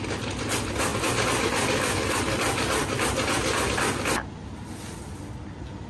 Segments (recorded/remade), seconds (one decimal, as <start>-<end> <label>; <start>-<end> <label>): 0.0-5.9 recorded